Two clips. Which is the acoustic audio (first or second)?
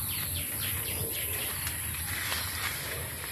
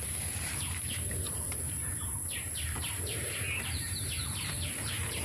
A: first